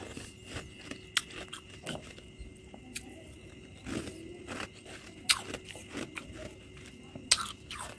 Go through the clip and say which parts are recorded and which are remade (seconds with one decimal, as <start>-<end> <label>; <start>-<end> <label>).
0.0-8.0 recorded